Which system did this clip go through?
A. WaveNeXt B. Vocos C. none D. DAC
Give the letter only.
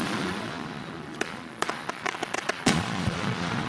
B